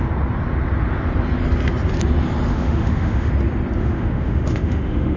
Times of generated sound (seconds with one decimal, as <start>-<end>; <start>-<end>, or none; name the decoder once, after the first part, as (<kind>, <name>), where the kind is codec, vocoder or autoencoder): 2.5-3.3 (autoencoder, DAC-VAE); 3.8-5.2